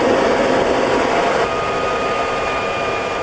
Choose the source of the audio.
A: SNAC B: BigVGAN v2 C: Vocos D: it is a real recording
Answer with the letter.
D